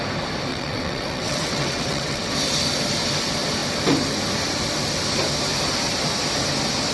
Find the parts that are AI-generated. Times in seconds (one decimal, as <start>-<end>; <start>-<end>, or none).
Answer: 0.5-2.3